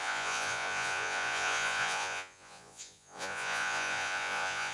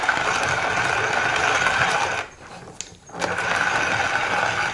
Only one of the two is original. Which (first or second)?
second